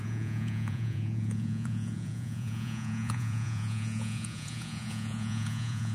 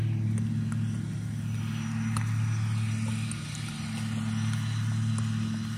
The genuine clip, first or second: second